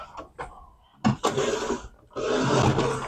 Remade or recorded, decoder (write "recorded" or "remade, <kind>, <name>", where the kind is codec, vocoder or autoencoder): recorded